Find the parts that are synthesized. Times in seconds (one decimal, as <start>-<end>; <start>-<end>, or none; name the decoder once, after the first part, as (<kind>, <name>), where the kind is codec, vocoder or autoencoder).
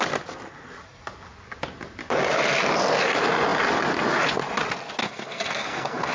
5.0-6.1 (codec, SNAC)